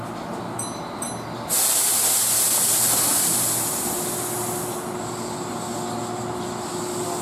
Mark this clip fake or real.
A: real